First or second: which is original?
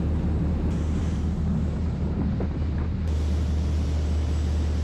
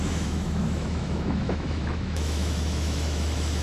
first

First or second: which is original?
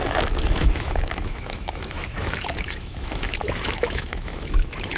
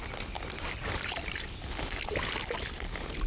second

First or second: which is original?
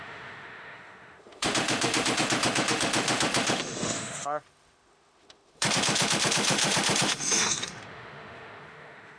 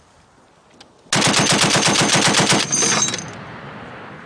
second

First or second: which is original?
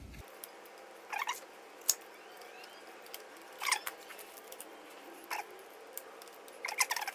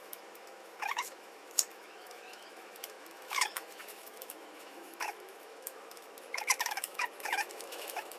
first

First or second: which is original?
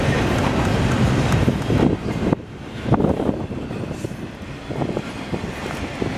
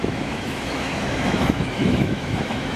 first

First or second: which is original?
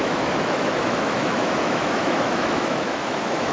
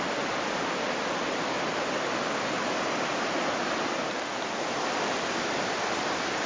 second